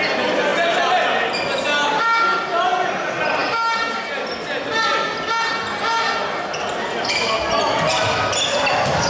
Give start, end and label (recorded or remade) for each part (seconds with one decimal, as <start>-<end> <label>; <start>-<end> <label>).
0.0-9.1 recorded

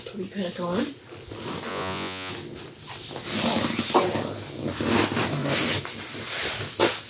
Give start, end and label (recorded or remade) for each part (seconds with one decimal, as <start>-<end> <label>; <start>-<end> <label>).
0.0-1.7 recorded; 1.7-2.3 remade; 2.3-7.1 recorded

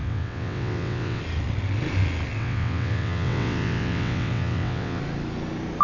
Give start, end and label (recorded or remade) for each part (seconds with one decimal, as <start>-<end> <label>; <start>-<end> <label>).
0.0-1.2 remade; 1.2-2.4 recorded; 2.4-5.0 remade; 5.0-5.8 recorded

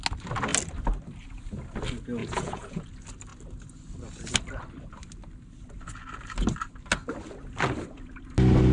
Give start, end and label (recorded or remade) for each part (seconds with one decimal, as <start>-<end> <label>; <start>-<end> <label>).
0.0-2.2 recorded; 2.2-2.8 remade; 2.8-8.7 recorded

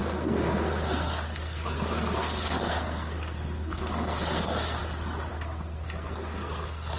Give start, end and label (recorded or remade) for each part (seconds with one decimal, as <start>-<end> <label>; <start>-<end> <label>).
0.0-4.8 remade; 4.8-5.3 recorded; 5.3-7.0 remade

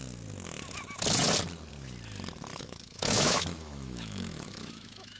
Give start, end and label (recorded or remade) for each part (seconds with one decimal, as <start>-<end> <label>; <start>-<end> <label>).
0.0-2.5 recorded; 2.5-5.2 remade

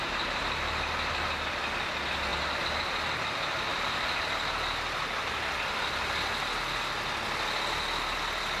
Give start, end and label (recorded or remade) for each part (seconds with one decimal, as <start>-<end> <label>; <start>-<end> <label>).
0.0-8.6 recorded